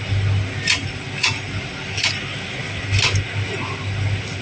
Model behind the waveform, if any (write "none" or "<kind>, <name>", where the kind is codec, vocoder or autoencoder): none